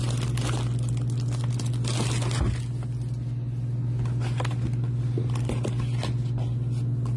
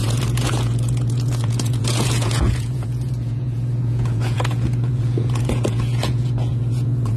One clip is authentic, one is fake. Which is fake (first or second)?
second